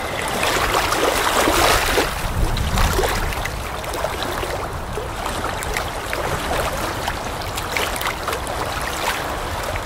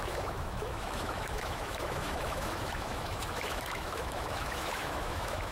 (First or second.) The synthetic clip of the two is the second